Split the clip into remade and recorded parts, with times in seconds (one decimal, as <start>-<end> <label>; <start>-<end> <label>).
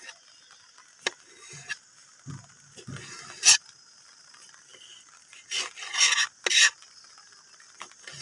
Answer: 0.0-8.2 recorded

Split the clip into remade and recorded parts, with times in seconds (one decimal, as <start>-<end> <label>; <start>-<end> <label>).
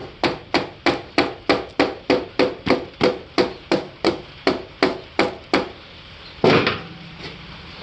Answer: 0.0-7.8 recorded